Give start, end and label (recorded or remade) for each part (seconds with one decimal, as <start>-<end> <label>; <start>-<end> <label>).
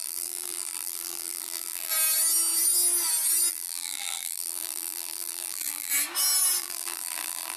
0.0-1.9 remade; 1.9-3.5 recorded; 3.5-5.9 remade; 5.9-6.6 recorded; 6.6-7.6 remade